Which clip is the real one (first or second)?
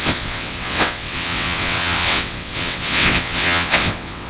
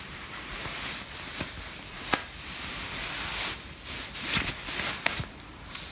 second